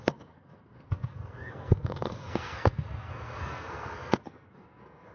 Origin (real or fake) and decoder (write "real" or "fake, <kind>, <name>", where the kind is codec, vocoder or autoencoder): fake, codec, SNAC